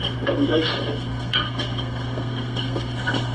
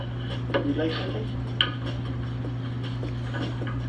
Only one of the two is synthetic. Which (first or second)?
first